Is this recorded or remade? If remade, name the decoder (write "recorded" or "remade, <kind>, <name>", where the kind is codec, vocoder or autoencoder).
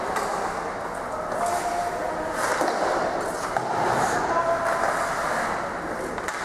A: recorded